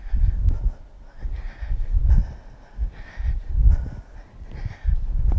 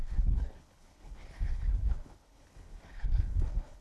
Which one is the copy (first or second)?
second